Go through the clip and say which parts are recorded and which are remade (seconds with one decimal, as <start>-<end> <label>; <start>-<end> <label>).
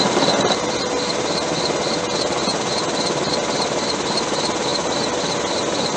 0.0-6.0 recorded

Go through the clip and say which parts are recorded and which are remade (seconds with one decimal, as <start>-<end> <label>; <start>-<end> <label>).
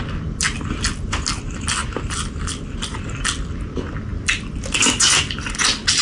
0.0-1.8 recorded; 1.8-3.1 remade; 3.1-6.0 recorded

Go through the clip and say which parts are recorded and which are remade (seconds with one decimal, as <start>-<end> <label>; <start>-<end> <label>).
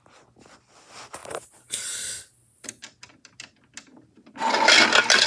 0.0-1.2 recorded; 1.2-2.7 remade; 2.7-3.9 recorded; 3.9-4.5 remade; 4.5-5.3 recorded